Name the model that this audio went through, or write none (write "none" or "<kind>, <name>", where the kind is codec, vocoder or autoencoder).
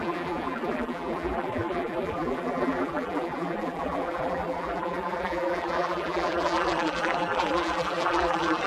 vocoder, BigVGAN v2